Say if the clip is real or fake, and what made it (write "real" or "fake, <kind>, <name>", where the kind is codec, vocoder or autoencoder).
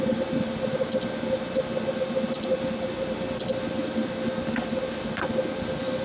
real